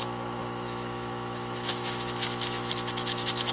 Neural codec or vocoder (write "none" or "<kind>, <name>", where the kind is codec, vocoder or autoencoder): autoencoder, DAC-VAE